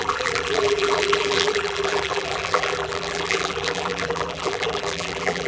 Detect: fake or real fake